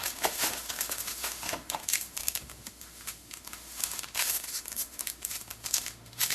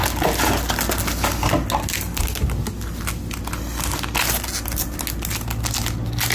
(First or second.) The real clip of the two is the second